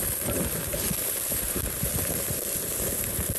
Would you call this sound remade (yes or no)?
yes